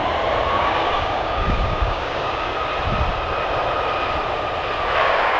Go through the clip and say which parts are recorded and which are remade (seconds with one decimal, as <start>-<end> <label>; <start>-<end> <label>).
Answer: 0.0-0.5 recorded; 0.5-2.5 remade; 2.5-5.0 recorded; 5.0-5.4 remade